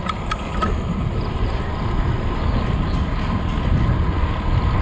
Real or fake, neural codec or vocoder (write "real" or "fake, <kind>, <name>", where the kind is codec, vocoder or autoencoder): real